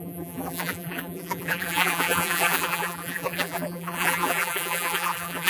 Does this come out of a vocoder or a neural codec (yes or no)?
yes